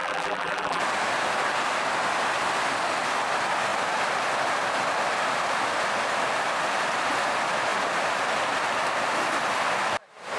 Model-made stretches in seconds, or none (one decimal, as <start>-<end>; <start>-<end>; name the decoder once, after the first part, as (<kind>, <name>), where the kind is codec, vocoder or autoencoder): 0.0-0.8 (vocoder, BigVGAN v2)